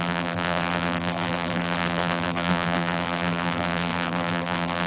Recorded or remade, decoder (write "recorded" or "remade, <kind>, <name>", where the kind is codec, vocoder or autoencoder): remade, vocoder, BigVGAN v2